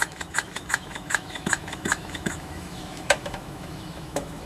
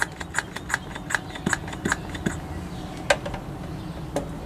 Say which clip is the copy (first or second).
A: first